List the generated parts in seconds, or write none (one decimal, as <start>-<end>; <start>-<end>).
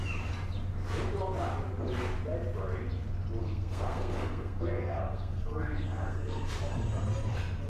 3.4-6.5